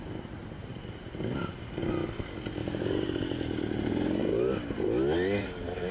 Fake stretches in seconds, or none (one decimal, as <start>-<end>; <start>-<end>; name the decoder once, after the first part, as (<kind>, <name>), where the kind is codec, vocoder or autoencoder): 0.4-1.2 (vocoder, BigVGAN v2)